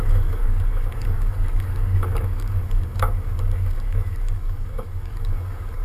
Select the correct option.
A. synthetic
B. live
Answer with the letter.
A